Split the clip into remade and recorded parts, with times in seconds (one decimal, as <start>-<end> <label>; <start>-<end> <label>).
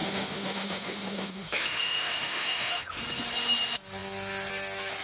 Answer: 0.0-3.0 remade; 3.0-5.0 recorded